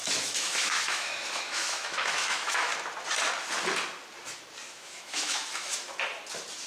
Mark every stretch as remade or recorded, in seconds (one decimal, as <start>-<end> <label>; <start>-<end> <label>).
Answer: 0.0-2.7 remade; 2.7-4.6 recorded; 4.6-5.7 remade; 5.7-6.7 recorded